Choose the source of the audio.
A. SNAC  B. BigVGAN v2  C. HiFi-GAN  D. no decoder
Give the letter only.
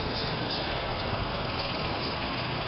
A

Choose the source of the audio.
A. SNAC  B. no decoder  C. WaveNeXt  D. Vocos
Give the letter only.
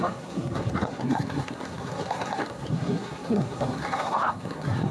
A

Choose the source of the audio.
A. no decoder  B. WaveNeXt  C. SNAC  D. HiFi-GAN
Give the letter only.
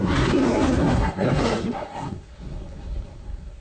C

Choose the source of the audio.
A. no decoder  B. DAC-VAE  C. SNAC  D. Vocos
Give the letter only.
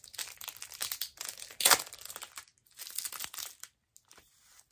A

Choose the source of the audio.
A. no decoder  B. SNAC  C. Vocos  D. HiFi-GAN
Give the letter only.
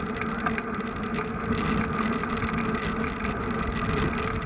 A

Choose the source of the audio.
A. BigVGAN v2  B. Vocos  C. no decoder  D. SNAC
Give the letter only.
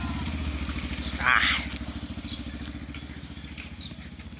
C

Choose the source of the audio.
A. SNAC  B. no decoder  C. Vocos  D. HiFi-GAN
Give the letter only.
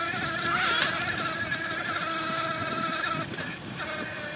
B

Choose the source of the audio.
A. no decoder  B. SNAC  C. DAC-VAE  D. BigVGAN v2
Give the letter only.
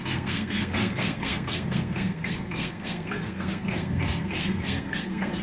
B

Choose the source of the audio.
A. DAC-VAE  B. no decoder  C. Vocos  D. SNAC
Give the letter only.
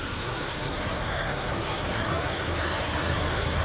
D